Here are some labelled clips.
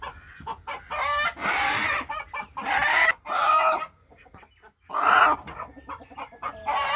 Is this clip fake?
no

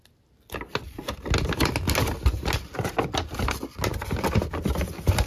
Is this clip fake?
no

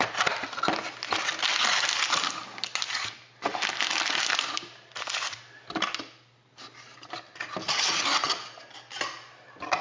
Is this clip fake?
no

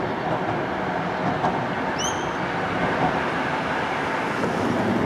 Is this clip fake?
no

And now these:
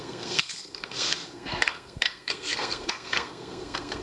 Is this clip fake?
yes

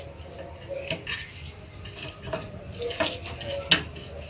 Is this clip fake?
no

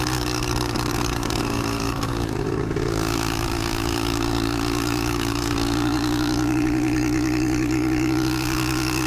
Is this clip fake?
yes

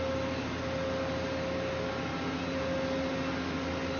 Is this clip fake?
no